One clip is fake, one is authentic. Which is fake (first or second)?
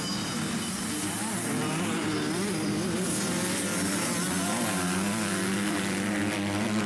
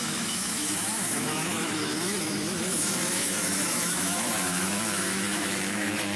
second